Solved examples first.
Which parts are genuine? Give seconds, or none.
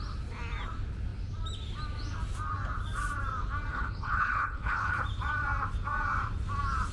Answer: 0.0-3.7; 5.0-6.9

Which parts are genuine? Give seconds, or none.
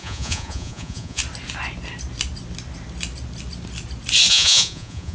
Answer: 1.2-4.3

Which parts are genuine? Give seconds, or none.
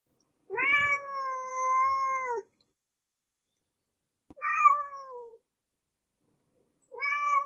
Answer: 0.0-1.5; 3.5-4.5; 5.3-7.5